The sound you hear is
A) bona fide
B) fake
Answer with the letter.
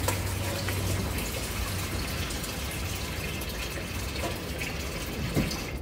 A